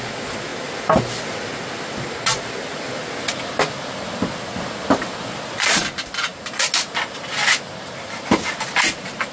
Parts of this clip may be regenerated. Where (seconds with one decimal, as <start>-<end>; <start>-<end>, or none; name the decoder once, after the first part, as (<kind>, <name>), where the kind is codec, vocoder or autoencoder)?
none